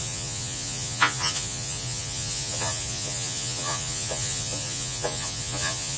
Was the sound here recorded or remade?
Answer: remade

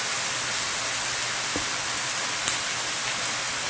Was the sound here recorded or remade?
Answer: recorded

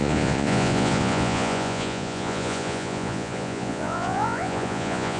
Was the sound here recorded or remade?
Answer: remade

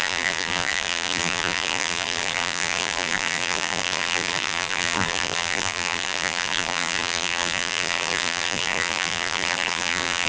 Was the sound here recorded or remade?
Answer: remade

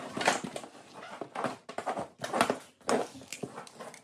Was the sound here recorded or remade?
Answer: recorded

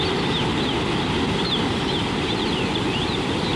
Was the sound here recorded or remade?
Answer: recorded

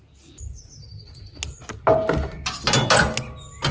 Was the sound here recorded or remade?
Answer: recorded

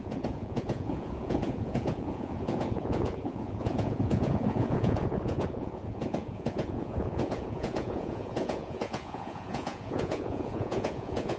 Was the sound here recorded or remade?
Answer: remade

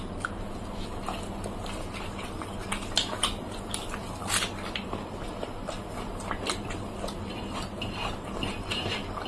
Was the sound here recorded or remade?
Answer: recorded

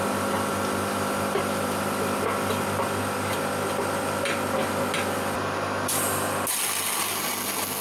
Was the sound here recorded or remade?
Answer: recorded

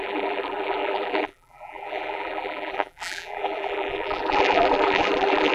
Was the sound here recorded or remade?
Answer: remade